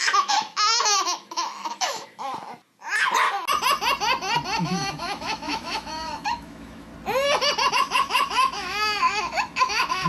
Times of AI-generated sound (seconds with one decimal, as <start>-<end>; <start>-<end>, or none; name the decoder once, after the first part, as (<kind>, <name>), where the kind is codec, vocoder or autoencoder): 0.0-2.3 (autoencoder, DAC-VAE); 4.6-6.9; 7.7-10.1